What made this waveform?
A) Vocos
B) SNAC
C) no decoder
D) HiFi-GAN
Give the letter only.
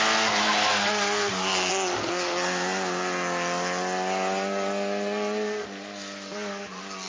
C